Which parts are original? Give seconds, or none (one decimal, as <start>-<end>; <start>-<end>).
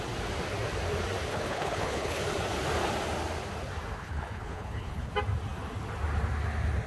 0.0-1.3; 2.2-4.0; 5.1-6.9